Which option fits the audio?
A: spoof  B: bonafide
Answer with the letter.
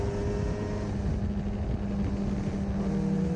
B